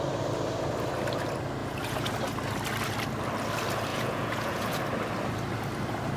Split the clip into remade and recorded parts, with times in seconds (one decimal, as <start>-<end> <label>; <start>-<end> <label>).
0.0-1.6 recorded; 1.6-2.1 remade; 2.1-3.9 recorded; 3.9-4.8 remade; 4.8-6.2 recorded